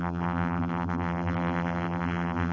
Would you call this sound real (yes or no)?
no